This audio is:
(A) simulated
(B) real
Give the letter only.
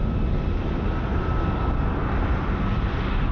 B